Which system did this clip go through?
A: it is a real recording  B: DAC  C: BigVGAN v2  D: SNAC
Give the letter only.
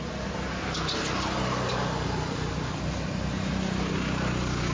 A